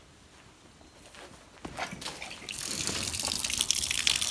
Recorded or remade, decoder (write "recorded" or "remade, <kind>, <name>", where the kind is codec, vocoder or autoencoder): recorded